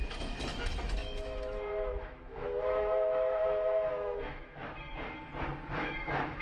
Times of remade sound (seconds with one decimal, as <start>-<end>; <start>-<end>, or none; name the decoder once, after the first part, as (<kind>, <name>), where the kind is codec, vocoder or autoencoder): 0.0-4.6 (autoencoder, DAC-VAE); 5.7-6.4